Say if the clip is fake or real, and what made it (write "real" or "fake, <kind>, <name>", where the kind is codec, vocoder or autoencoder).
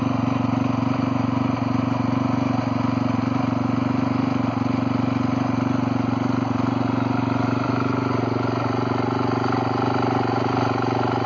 real